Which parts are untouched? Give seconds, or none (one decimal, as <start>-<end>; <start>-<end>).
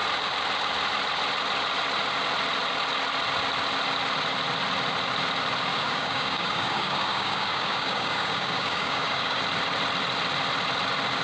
0.0-5.7; 9.4-11.2